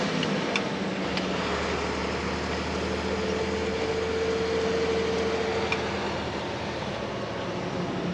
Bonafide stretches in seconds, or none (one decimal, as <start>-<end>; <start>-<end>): 0.0-8.1